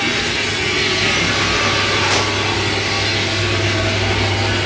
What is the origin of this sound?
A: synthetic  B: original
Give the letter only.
B